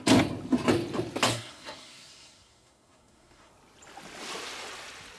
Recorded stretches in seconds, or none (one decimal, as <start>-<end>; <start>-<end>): 0.0-1.3; 3.5-5.2